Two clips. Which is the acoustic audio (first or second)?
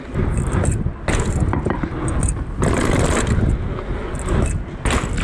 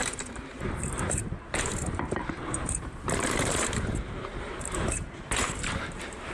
first